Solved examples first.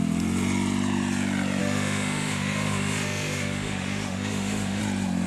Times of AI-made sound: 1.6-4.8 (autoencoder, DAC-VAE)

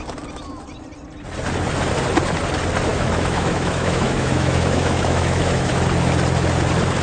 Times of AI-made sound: 2.9-5.7 (autoencoder, DAC-VAE)